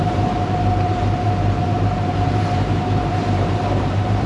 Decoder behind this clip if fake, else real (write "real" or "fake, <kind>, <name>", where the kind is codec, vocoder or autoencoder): fake, vocoder, BigVGAN v2